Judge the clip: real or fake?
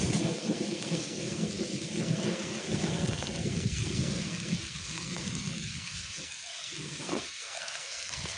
fake